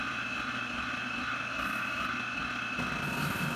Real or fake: real